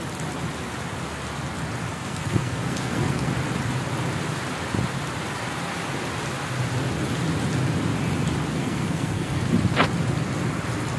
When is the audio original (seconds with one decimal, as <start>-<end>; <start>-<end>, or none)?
0.0-1.9; 3.3-8.5; 9.5-11.0